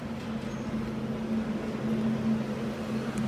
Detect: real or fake real